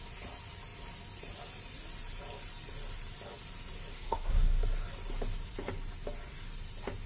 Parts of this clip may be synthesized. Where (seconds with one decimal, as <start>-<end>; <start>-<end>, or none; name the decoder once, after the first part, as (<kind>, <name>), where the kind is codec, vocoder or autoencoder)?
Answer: 3.9-4.6 (codec, SNAC)